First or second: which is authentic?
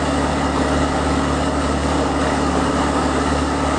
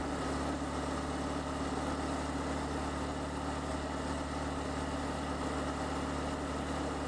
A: second